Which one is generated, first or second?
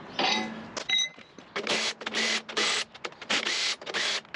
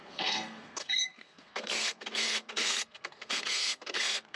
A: second